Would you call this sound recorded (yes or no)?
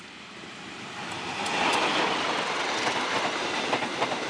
yes